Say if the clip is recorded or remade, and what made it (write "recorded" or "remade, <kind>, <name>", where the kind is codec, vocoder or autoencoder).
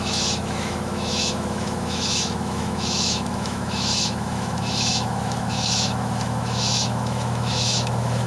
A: remade, autoencoder, DAC-VAE